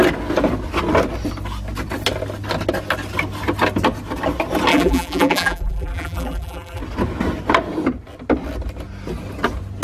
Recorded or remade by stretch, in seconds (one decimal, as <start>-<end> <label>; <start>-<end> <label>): 0.0-4.7 recorded; 4.7-6.8 remade; 6.8-9.8 recorded